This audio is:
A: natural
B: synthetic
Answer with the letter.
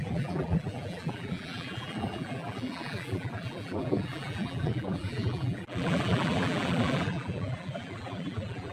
B